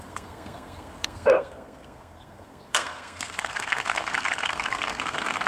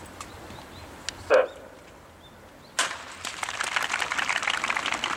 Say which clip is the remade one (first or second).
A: first